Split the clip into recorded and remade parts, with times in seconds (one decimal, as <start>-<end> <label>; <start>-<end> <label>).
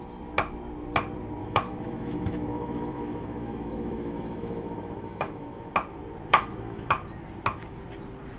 0.0-1.4 recorded; 1.4-5.7 remade; 5.7-6.3 recorded; 6.3-6.9 remade; 6.9-8.4 recorded